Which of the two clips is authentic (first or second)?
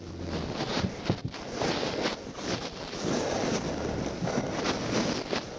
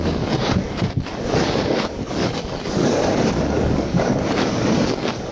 first